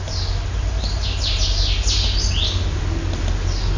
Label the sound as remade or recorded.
recorded